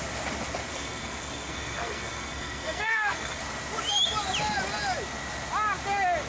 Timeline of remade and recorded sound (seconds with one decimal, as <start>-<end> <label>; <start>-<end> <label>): 0.0-0.7 recorded; 0.7-3.4 remade; 3.4-6.3 recorded